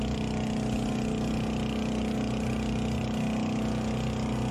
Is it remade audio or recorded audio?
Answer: recorded